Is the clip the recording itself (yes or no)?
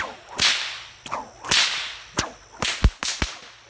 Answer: yes